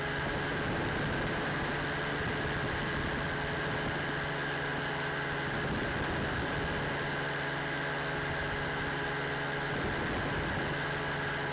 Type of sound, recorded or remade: recorded